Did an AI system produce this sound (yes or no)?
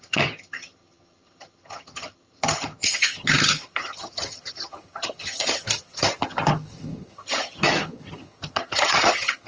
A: yes